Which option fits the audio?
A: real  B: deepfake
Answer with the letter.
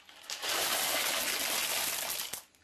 A